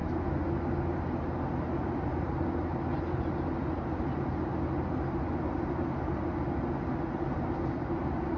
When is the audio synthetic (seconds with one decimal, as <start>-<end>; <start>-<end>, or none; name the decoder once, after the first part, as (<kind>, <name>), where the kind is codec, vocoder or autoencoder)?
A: 1.8-4.5 (vocoder, BigVGAN v2); 7.7-8.4